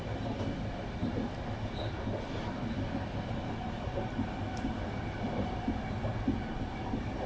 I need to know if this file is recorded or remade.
recorded